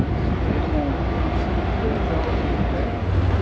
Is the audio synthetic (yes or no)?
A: no